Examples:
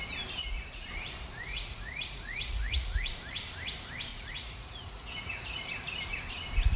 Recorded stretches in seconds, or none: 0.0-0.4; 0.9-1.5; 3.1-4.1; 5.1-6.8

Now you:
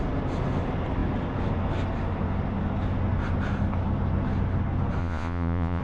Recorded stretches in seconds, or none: 0.0-5.0

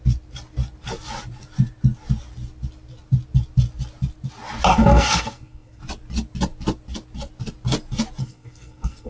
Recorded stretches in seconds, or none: 0.0-4.7; 5.8-8.2

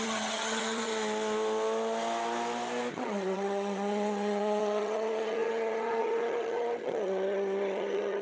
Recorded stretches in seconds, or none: 0.9-2.9